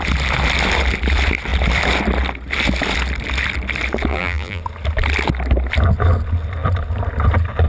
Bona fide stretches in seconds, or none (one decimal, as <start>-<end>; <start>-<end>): 0.0-4.1; 4.6-7.7